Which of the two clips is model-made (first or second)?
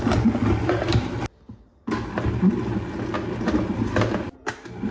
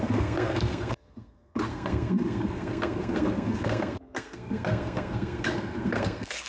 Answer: second